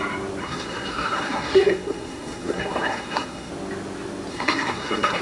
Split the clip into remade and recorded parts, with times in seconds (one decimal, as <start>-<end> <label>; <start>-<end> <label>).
0.0-0.4 recorded; 0.4-3.5 remade; 3.5-4.3 recorded; 4.3-5.2 remade